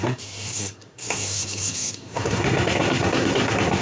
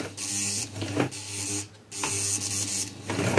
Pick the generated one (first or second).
first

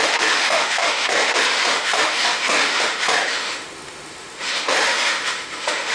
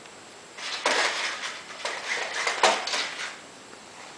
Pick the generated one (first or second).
first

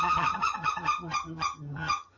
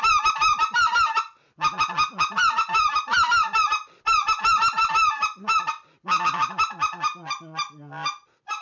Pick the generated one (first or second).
first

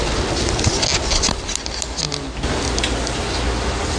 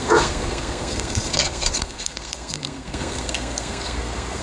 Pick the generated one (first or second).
second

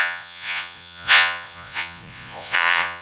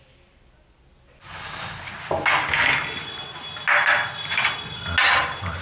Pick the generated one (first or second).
first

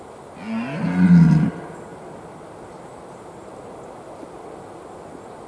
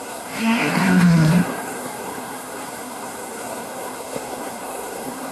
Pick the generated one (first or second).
second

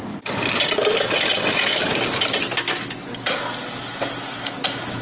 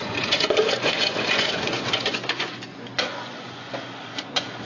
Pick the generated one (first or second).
second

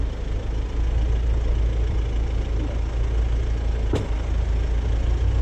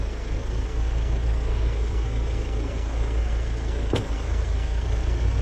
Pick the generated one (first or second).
second